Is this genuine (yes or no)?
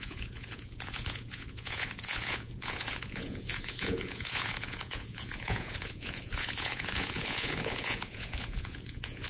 no